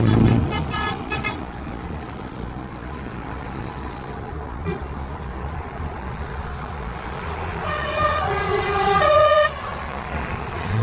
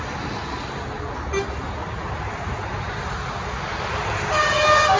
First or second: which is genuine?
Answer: second